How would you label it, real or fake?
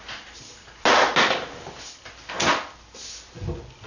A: real